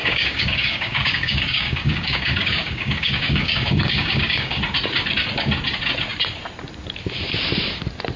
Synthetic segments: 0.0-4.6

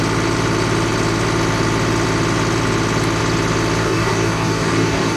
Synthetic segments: 3.8-5.2

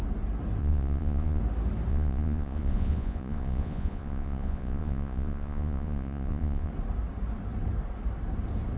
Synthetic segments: 0.6-1.4; 1.9-6.7

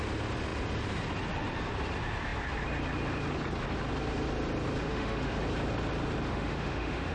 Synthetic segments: 4.8-5.4; 6.3-7.1

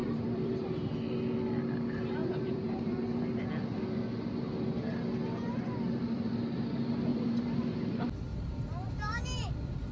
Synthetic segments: 0.0-0.9; 2.2-3.4; 7.1-7.9; 8.3-8.9

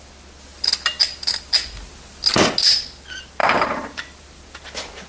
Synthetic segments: 3.4-4.4

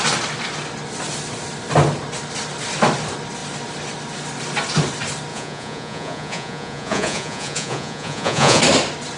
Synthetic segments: 5.3-8.6

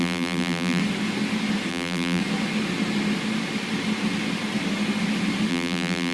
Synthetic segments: 0.0-0.8; 1.7-2.2; 5.5-6.1